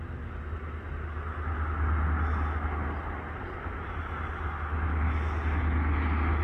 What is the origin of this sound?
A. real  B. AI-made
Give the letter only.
A